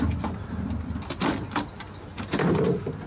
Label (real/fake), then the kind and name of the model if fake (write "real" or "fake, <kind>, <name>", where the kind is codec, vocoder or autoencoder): real